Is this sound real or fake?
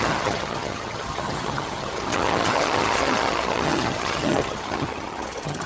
fake